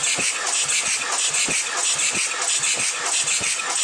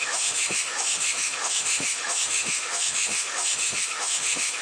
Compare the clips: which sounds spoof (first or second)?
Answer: second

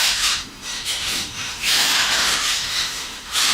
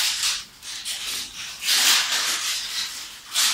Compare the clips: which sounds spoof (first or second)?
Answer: first